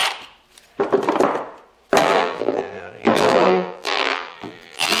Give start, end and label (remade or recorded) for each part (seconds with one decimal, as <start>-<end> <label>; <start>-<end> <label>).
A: 0.0-2.0 recorded; 2.0-5.0 remade